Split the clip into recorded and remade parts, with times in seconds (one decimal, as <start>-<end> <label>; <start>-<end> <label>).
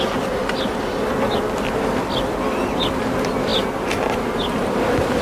0.0-5.2 recorded